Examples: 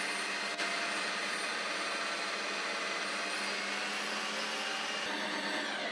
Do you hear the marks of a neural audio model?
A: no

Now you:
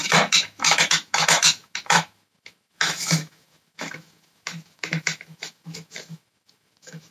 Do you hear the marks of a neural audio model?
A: yes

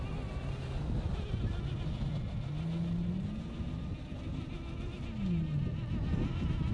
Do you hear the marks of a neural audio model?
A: no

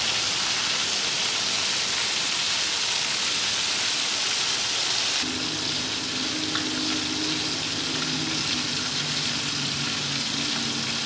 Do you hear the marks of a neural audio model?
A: no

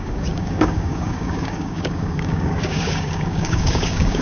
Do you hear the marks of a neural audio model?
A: yes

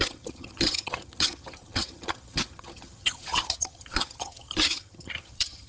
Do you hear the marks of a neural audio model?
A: yes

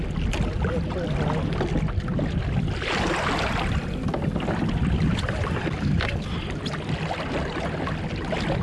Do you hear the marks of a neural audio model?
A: no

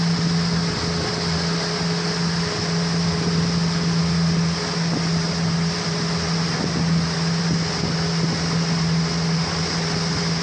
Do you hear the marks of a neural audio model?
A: no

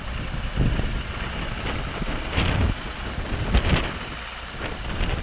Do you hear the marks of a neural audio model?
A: no